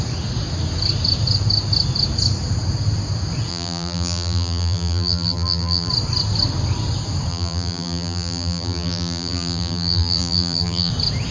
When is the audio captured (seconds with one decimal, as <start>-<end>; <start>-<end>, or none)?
0.0-3.5; 5.9-7.3; 10.9-11.3